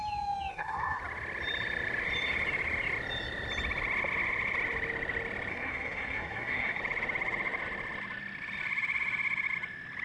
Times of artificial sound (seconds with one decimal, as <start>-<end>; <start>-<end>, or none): 0.5-1.0; 5.5-6.8